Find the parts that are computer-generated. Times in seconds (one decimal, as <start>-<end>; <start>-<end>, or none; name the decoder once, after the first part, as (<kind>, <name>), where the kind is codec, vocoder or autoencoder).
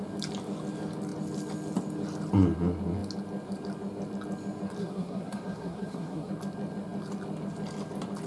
4.8-6.3 (codec, SNAC)